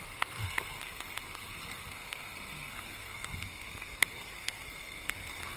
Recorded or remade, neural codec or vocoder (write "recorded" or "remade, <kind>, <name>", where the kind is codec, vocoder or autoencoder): remade, codec, SNAC